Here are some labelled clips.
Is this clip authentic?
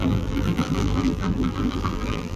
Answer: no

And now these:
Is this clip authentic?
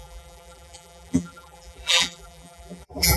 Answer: no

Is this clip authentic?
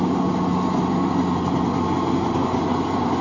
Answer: yes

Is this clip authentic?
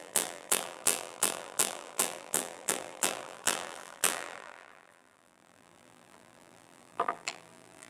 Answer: no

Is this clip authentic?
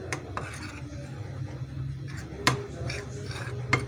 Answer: no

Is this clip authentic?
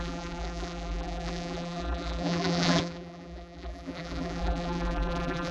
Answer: no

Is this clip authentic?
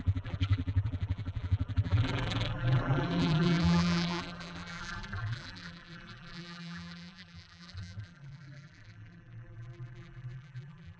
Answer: no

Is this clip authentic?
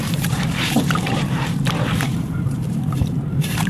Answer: no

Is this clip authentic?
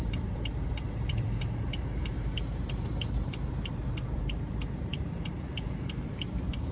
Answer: no